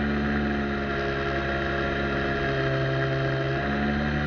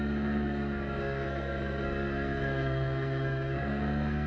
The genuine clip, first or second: first